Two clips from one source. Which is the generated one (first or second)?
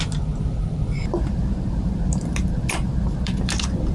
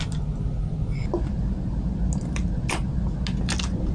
first